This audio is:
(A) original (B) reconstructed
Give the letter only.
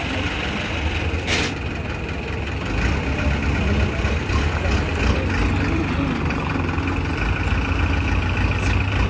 A